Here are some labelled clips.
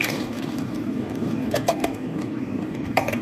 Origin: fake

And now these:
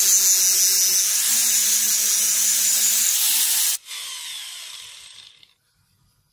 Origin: real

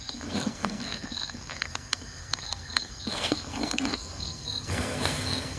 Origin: fake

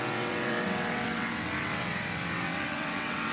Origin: fake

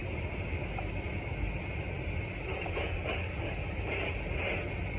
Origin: real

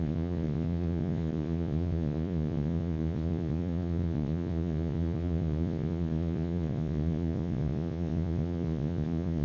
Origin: fake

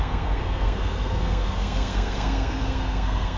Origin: fake